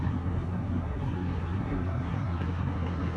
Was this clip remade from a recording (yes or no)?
yes